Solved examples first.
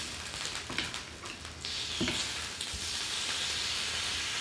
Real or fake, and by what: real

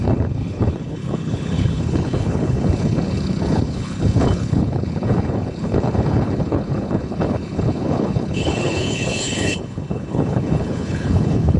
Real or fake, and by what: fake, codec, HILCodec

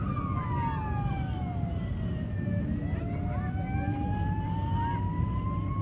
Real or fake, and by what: real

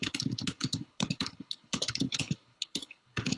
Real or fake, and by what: fake, codec, HILCodec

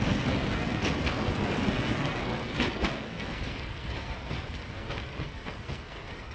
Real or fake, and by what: fake, codec, SNAC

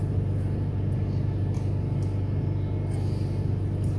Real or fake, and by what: real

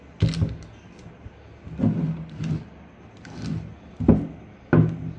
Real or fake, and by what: real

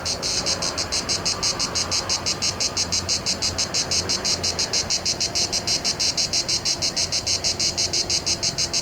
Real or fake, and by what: real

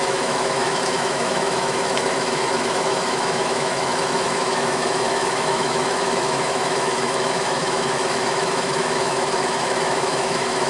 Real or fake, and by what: fake, autoencoder, DAC-VAE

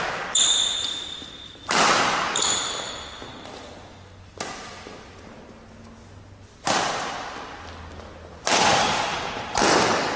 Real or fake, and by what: real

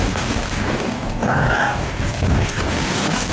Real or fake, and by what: fake, codec, DAC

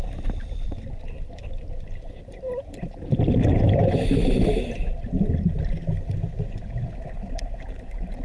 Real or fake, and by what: real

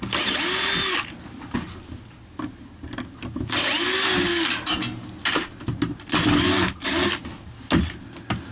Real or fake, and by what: real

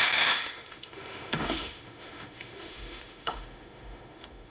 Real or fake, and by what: fake, autoencoder, DAC-VAE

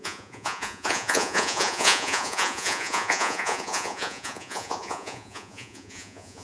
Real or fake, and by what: fake, vocoder, Vocos